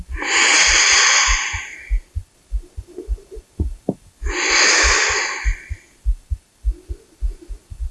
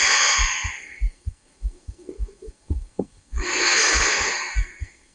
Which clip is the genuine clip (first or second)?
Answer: first